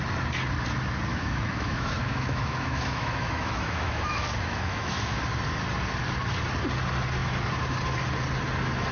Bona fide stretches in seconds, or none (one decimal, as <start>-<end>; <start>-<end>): 0.0-1.1; 5.2-8.9